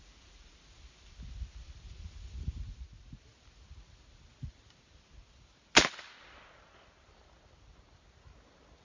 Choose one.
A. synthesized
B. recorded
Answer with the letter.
B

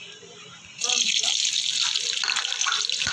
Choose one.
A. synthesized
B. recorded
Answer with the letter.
B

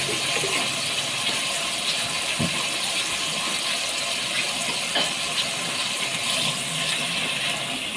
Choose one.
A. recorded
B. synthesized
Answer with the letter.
A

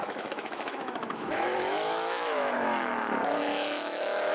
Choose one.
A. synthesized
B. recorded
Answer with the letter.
A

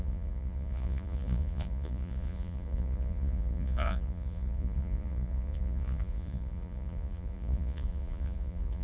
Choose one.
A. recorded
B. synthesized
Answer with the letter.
B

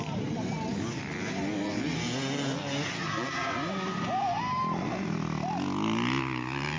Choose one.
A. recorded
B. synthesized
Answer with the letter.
A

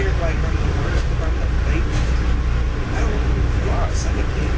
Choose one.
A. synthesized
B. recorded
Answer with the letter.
B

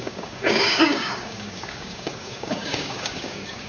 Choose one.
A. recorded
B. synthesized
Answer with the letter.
B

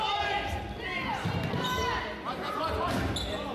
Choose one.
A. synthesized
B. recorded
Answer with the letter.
B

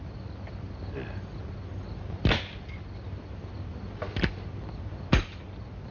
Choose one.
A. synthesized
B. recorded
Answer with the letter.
B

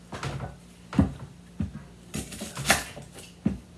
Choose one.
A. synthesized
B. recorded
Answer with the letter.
B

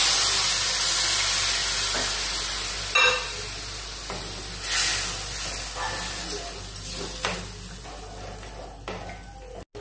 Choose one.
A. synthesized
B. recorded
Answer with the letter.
B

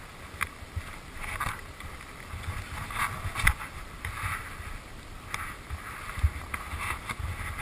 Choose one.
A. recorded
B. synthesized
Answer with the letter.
A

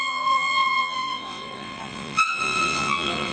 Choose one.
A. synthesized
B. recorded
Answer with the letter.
A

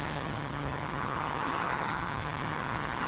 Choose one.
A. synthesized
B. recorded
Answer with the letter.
A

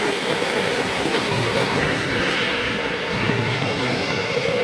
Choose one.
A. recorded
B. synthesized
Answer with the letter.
B